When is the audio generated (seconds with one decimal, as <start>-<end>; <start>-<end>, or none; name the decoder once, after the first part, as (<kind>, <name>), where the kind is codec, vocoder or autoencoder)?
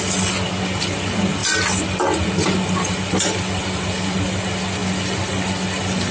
none